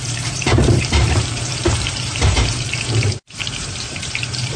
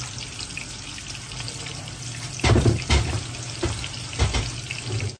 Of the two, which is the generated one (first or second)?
first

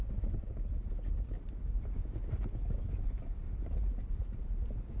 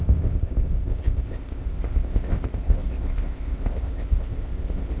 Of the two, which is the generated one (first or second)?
second